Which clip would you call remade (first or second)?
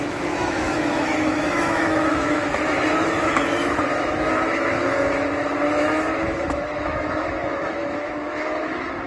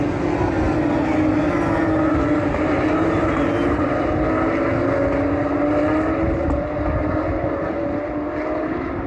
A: first